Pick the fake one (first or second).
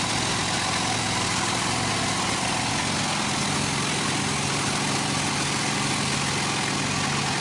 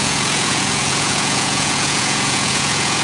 second